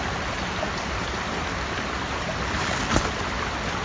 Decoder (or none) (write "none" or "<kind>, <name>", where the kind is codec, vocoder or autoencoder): none